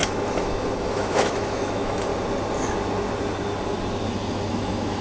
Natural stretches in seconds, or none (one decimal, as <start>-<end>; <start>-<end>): 2.1-4.5